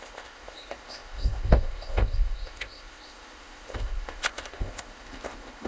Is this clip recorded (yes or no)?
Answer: no